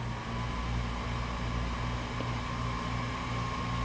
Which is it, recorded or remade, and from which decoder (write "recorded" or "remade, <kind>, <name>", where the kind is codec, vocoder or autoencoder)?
recorded